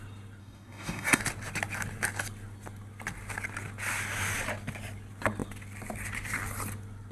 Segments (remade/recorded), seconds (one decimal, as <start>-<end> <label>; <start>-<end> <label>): 0.0-0.4 recorded; 0.4-1.2 remade; 1.2-7.1 recorded